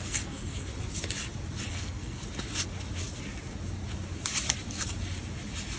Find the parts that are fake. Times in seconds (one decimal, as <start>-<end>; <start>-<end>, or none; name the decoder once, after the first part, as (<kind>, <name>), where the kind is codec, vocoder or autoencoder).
0.0-0.7 (codec, SNAC); 1.7-2.2